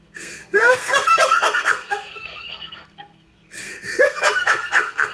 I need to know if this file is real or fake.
fake